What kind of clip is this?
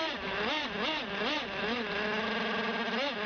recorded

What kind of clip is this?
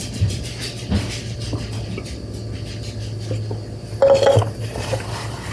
recorded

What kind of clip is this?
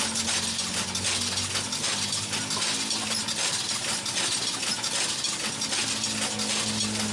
recorded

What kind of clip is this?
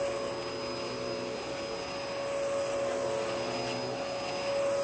recorded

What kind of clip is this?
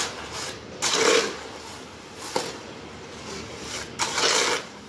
recorded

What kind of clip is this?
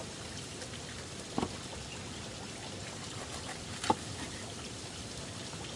recorded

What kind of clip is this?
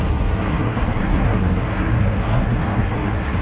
remade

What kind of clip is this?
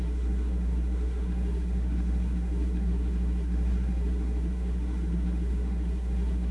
remade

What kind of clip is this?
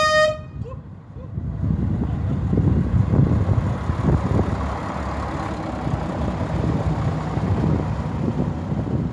recorded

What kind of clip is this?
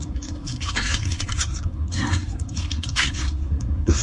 remade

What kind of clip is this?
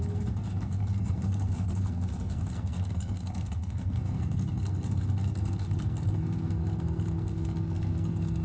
remade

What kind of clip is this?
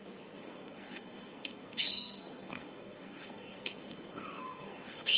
remade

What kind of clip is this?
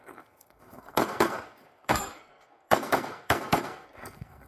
remade